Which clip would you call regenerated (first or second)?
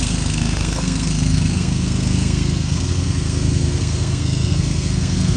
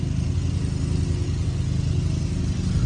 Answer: first